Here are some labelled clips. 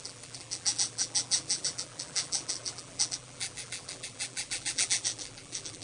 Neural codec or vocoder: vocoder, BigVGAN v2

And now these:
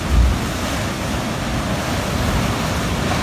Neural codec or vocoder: none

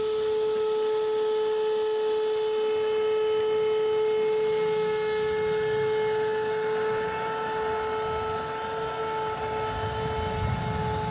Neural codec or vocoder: none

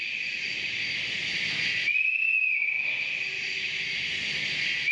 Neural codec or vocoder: none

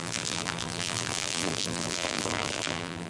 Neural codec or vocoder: vocoder, BigVGAN v2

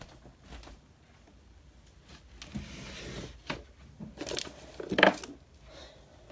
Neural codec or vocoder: none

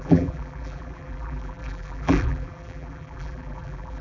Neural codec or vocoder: vocoder, BigVGAN v2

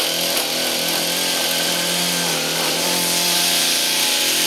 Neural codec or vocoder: none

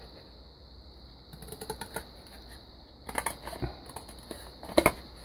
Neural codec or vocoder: none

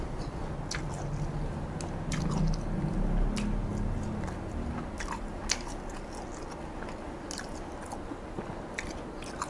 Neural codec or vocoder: none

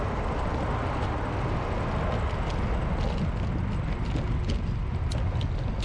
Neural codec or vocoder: none